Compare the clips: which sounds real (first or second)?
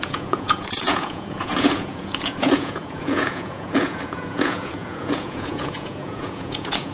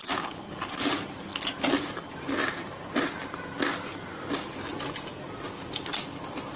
second